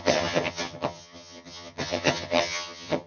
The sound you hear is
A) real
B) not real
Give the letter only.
B